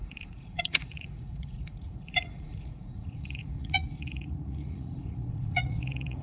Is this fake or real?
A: fake